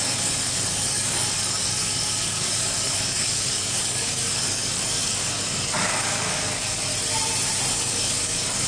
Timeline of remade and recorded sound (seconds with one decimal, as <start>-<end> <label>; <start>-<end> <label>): 0.0-6.9 remade; 6.9-7.7 recorded; 7.7-8.7 remade